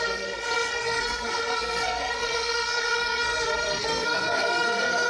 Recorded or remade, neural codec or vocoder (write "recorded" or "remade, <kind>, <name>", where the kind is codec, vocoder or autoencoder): remade, codec, SNAC